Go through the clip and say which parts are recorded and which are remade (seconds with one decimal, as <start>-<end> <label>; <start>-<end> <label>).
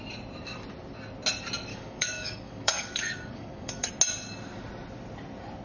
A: 0.0-1.7 recorded; 1.7-3.9 remade; 3.9-5.6 recorded